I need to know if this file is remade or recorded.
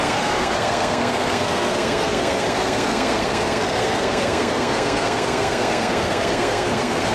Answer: remade